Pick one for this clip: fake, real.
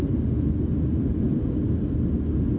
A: real